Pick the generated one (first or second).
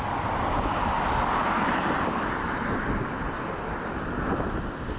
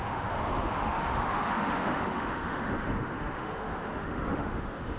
second